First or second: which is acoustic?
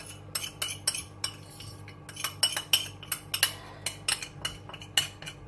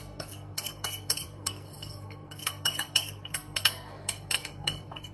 first